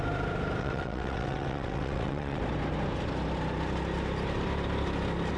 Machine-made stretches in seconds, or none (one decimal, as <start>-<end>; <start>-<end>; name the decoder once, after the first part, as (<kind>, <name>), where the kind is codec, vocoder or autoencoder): 0.6-2.4 (vocoder, WaveNeXt)